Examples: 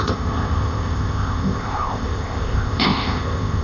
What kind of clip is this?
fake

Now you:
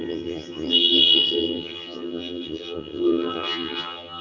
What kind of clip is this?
fake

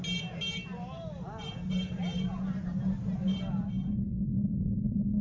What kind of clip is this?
real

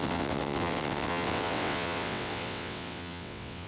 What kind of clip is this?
fake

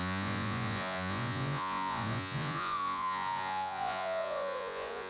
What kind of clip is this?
fake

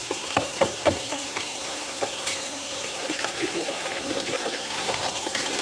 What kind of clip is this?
fake